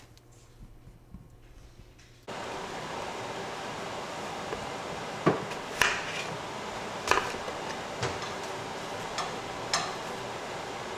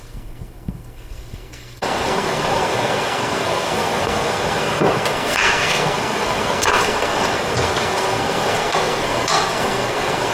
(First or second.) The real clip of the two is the first